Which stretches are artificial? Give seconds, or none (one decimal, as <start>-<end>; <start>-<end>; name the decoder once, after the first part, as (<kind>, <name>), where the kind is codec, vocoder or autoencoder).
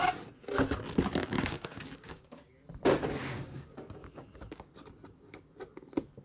1.2-2.5 (codec, DAC); 3.2-4.7